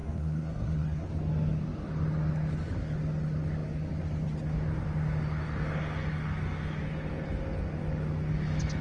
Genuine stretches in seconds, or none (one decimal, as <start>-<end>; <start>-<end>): 1.1-8.8